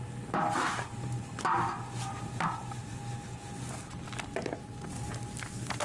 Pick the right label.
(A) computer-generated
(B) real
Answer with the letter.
B